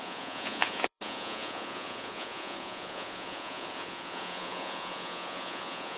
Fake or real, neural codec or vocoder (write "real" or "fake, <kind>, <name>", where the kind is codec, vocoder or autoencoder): fake, vocoder, Vocos